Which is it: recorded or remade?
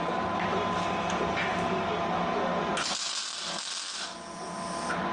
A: recorded